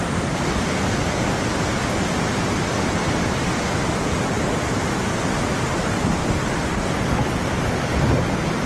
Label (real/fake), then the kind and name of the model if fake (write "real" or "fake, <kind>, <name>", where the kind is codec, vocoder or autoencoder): real